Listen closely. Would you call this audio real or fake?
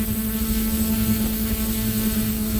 fake